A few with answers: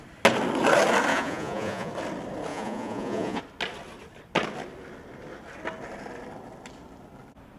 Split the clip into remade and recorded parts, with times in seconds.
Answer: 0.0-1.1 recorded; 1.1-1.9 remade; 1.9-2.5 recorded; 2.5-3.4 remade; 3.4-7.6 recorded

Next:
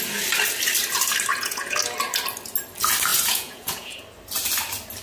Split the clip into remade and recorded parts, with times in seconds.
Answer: 0.0-1.3 recorded; 1.3-1.8 remade; 1.8-3.1 recorded; 3.1-4.0 remade; 4.0-5.0 recorded

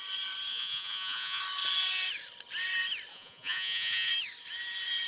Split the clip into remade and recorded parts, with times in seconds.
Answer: 0.0-0.5 recorded; 0.5-1.4 remade; 1.4-3.1 recorded; 3.1-4.1 remade; 4.1-5.1 recorded